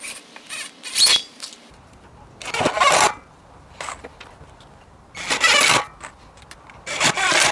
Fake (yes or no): no